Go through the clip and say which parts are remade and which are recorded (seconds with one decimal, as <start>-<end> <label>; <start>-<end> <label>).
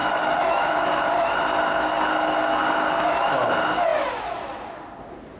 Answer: 0.0-1.3 remade; 1.3-5.4 recorded